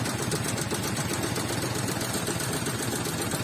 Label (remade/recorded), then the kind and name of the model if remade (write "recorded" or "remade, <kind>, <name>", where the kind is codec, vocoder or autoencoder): recorded